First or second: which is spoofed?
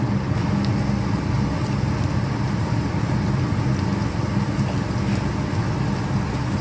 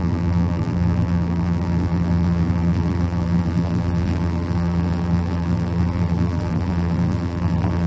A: second